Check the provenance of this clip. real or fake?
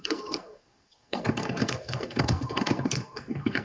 fake